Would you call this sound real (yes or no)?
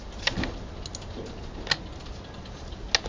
yes